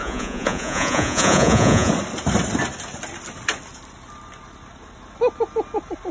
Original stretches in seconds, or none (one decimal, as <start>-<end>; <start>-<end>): 1.9-6.1